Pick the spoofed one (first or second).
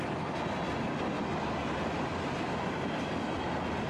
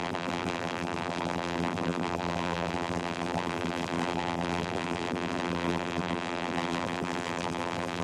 second